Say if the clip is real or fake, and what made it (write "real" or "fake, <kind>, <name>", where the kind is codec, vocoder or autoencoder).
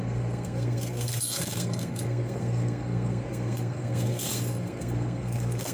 fake, codec, SNAC